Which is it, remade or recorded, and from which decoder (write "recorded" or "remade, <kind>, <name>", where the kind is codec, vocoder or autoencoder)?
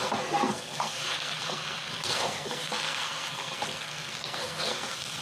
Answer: remade, codec, SNAC